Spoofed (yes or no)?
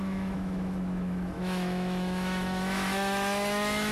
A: yes